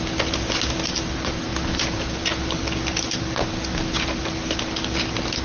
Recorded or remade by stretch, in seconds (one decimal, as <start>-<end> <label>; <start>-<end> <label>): 0.0-5.4 recorded